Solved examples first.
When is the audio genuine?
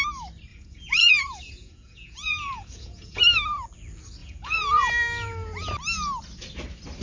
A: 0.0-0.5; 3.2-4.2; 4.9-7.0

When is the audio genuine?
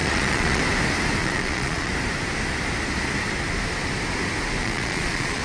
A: 0.6-1.2; 1.9-4.6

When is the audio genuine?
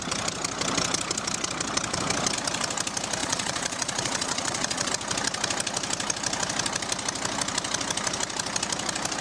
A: 0.0-3.2; 4.9-9.2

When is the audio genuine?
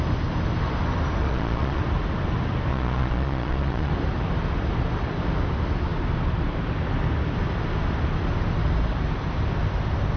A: 0.0-1.2; 1.8-2.7; 3.9-10.2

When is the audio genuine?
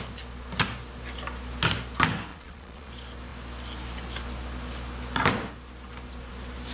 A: 0.0-2.3; 2.9-6.7